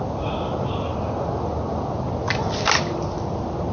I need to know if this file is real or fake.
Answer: real